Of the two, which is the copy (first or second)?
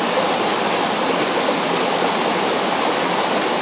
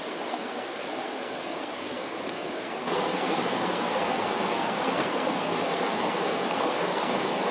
second